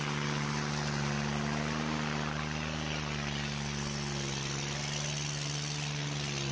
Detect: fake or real real